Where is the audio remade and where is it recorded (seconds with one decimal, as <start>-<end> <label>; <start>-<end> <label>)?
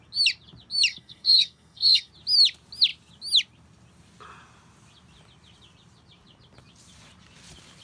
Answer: 0.0-0.9 recorded; 0.9-2.1 remade; 2.1-7.8 recorded